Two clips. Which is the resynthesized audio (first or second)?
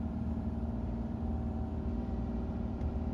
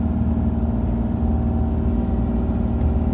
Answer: first